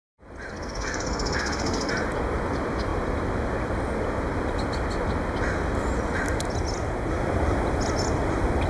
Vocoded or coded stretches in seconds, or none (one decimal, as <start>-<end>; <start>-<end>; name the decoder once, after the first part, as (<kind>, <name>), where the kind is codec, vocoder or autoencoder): 0.5-1.9 (codec, SNAC)